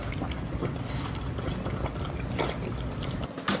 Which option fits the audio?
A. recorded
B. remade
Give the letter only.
A